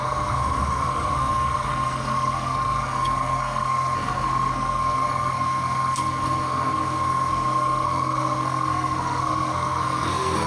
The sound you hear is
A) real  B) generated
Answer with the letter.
B